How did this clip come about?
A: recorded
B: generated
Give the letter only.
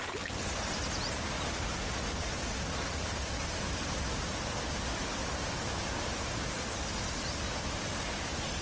A